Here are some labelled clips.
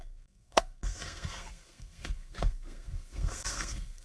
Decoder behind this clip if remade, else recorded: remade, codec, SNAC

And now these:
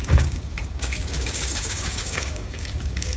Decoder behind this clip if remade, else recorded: remade, codec, DAC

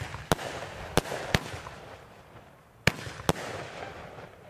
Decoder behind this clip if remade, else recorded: recorded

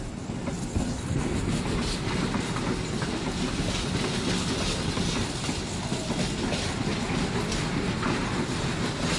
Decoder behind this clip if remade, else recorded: recorded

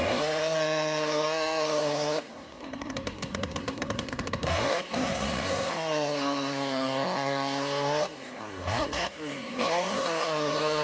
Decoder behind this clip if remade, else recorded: remade, codec, SNAC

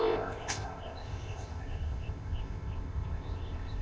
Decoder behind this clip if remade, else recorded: remade, codec, ZipCodec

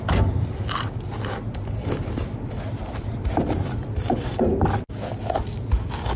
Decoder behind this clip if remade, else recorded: recorded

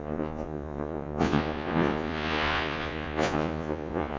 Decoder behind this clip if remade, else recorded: remade, vocoder, Vocos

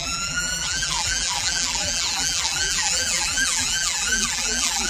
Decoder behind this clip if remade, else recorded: remade, vocoder, BigVGAN v2